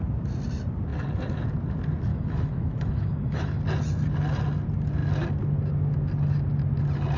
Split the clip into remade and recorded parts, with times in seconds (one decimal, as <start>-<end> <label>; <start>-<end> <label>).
0.0-2.1 recorded; 2.1-3.6 remade; 3.6-7.2 recorded